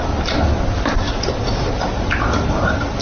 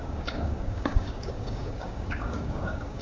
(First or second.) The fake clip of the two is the second